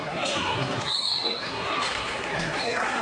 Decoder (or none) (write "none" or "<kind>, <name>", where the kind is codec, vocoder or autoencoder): codec, SNAC